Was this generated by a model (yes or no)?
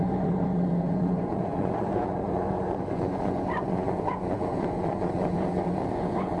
yes